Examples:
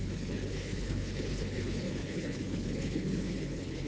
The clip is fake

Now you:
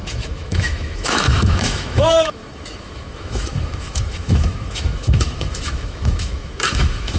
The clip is fake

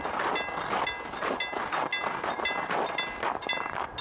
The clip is real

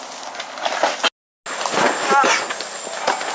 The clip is real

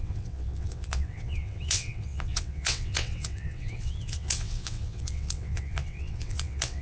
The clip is fake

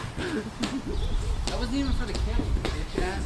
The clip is real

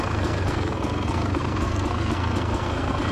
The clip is fake